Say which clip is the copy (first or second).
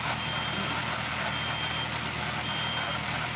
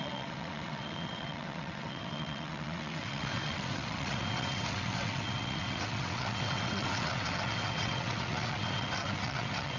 second